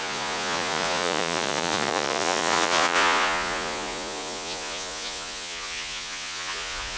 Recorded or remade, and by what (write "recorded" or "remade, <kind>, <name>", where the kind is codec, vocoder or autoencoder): remade, vocoder, Vocos